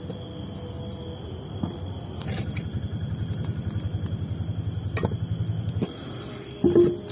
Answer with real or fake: real